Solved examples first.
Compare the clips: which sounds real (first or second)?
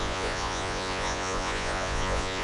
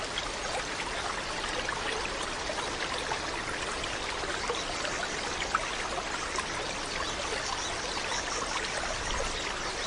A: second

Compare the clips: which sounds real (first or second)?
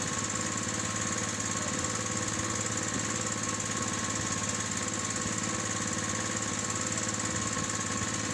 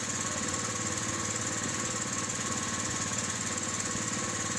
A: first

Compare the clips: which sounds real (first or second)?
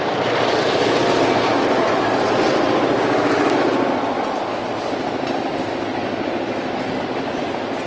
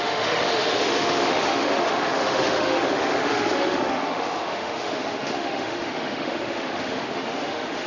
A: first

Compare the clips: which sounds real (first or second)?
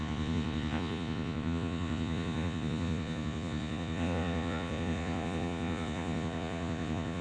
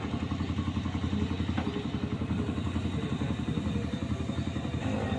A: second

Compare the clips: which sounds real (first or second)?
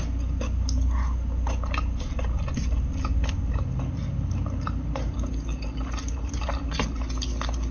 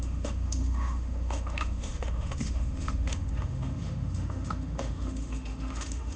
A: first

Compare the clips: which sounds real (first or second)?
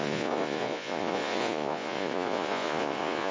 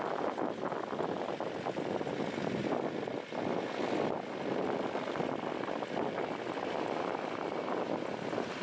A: second